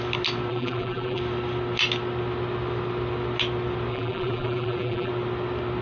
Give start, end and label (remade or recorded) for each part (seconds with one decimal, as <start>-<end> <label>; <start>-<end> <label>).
0.0-0.5 recorded; 0.5-1.2 remade; 1.2-3.9 recorded; 3.9-5.1 remade; 5.1-5.8 recorded